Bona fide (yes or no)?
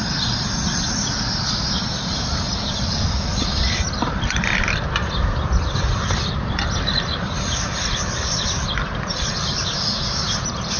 no